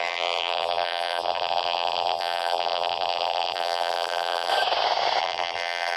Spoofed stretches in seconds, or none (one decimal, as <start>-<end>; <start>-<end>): 0.0-4.5; 5.2-6.0